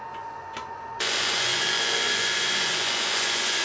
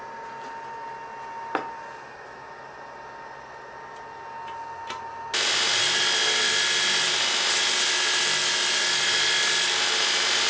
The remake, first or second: first